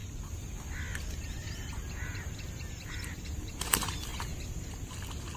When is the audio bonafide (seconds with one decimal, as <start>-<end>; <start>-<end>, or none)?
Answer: 0.0-1.4; 3.5-5.4